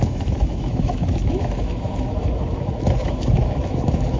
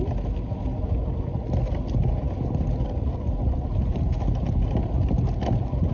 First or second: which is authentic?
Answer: second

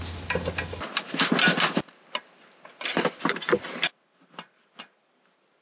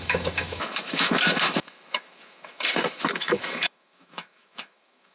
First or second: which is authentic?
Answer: first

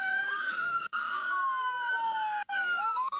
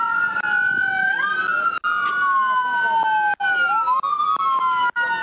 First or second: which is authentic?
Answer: second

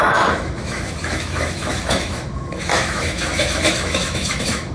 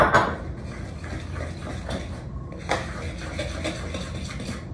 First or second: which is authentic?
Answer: second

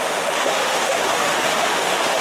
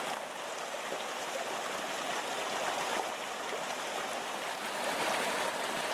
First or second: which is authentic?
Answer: second